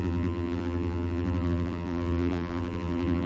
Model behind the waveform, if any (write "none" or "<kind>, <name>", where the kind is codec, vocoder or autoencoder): vocoder, BigVGAN v2